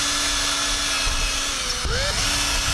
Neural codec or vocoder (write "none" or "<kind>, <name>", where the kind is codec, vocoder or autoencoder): none